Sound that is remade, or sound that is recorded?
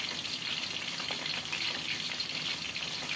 recorded